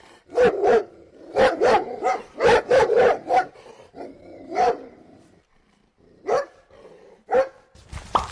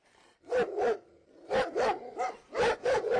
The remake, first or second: first